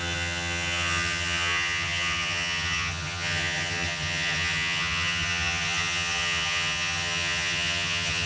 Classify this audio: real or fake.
fake